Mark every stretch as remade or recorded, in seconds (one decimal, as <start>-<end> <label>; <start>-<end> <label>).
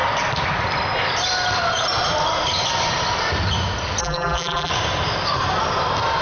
0.0-4.0 recorded; 4.0-4.7 remade; 4.7-6.2 recorded